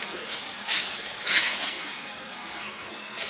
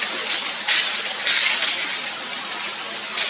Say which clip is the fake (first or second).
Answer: first